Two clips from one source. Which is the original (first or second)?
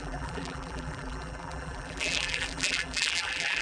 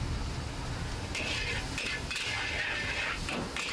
second